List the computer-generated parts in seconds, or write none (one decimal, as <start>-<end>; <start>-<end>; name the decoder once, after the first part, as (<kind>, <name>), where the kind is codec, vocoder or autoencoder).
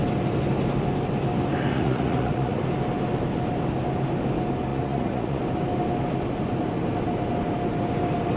1.7-2.6 (vocoder, Vocos); 4.7-5.4